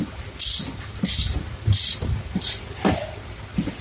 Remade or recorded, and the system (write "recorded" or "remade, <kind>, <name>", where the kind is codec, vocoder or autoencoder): recorded